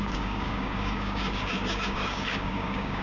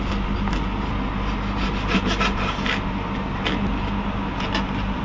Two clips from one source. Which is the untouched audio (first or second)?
second